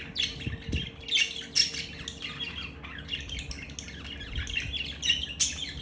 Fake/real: real